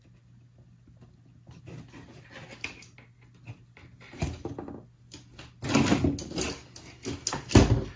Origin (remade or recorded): recorded